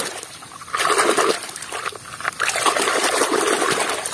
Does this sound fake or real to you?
fake